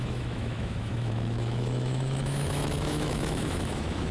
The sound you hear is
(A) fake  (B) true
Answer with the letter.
A